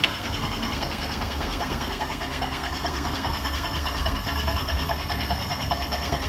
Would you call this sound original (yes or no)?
no